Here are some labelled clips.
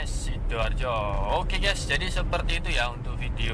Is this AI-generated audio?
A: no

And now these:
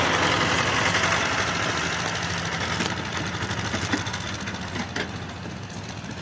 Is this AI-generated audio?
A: no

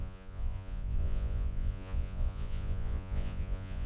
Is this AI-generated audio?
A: yes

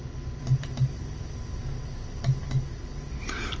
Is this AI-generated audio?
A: no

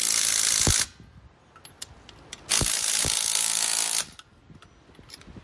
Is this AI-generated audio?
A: no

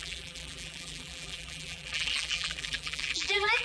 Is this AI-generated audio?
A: yes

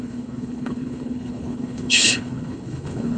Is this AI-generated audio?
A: yes